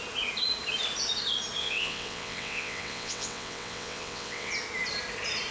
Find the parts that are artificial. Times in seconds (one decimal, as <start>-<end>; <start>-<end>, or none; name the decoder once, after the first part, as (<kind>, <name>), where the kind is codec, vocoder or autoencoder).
1.6-4.5 (vocoder, WaveNeXt)